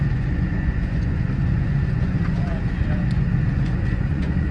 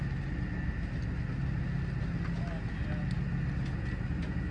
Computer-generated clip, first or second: first